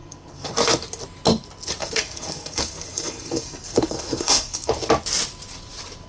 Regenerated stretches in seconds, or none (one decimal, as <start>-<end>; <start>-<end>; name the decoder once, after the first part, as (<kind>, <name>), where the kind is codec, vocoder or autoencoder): 0.0-0.5 (codec, SNAC); 1.8-4.7